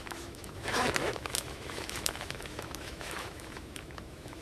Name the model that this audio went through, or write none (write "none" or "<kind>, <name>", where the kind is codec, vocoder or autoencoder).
autoencoder, DAC-VAE